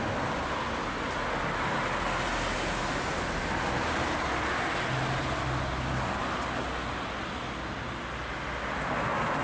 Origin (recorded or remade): recorded